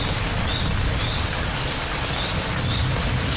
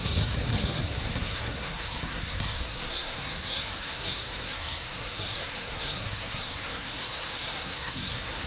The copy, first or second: second